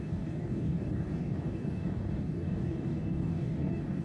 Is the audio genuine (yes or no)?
no